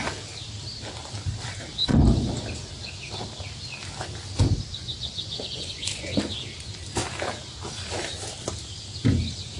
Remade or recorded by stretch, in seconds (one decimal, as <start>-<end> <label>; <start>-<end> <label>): 0.0-4.7 recorded; 4.7-6.2 remade; 6.2-9.6 recorded